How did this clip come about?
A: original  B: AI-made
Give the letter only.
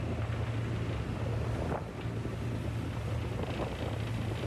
A